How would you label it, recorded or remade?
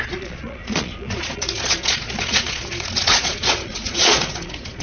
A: remade